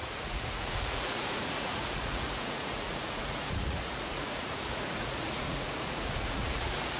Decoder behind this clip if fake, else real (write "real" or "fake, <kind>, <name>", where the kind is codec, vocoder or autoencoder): fake, vocoder, Vocos